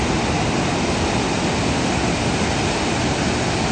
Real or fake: real